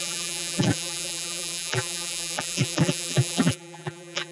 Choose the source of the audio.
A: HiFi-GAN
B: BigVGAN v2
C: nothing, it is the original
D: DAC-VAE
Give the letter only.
B